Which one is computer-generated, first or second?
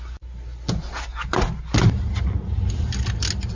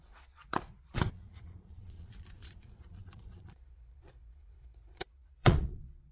second